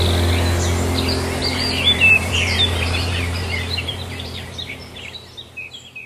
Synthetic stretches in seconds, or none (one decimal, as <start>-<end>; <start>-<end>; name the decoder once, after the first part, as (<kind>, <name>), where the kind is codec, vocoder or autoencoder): 1.4-5.1 (vocoder, BigVGAN v2)